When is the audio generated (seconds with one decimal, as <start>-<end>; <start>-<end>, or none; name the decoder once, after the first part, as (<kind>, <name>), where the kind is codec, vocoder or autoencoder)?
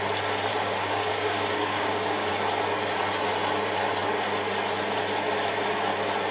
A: 0.5-2.3 (codec, DAC)